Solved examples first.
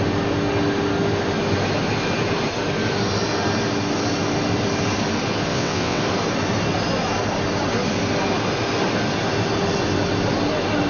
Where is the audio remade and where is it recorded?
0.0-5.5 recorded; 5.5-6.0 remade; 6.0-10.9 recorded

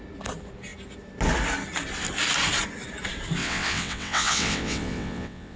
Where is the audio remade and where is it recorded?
0.0-3.4 recorded; 3.4-5.6 remade

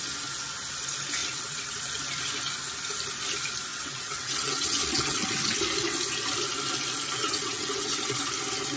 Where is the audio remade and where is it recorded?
0.0-1.2 recorded; 1.2-1.8 remade; 1.8-3.7 recorded; 3.7-5.6 remade; 5.6-7.2 recorded; 7.2-8.2 remade; 8.2-8.8 recorded

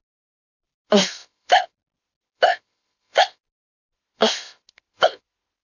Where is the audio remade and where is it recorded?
0.0-5.6 recorded